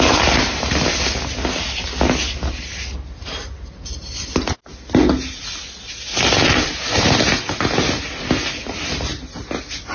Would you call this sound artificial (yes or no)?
no